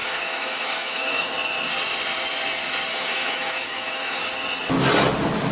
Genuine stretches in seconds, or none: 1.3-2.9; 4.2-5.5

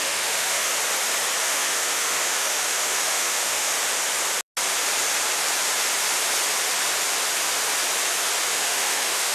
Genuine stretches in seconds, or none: 0.7-1.4; 3.7-8.5

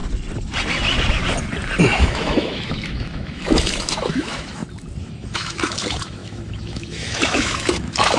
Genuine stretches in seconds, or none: 0.0-1.8; 4.6-5.1

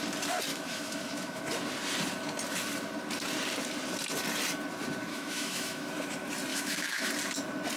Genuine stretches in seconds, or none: 0.0-0.5; 1.4-5.1; 5.9-6.5; 7.1-7.8

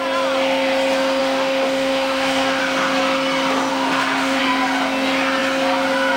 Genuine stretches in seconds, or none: 0.0-1.2; 2.6-3.7; 4.4-6.2

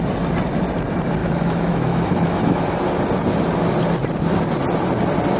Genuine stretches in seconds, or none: 0.0-1.2; 2.6-5.4

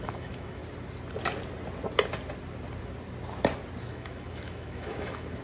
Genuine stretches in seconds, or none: 0.6-3.8